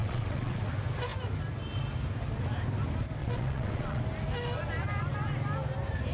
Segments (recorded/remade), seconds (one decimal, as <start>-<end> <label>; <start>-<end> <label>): 0.0-0.6 remade; 0.6-3.2 recorded; 3.2-4.0 remade; 4.0-6.1 recorded